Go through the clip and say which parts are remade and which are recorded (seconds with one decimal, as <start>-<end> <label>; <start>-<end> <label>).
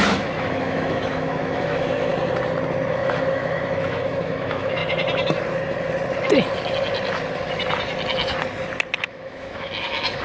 0.0-2.1 remade; 2.1-2.9 recorded; 2.9-4.8 remade; 4.8-9.0 recorded; 9.0-10.2 remade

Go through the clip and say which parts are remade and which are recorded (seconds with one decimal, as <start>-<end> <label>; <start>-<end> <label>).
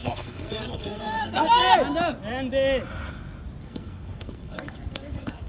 0.0-1.6 remade; 1.6-3.6 recorded; 3.6-5.5 remade